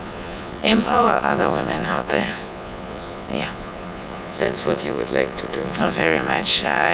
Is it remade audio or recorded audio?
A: remade